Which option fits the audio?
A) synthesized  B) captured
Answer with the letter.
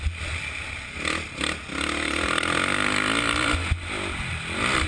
B